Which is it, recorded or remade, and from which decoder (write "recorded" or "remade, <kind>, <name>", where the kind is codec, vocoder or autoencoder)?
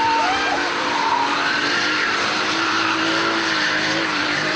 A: remade, vocoder, BigVGAN v2